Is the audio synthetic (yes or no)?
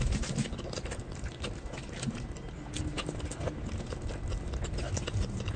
no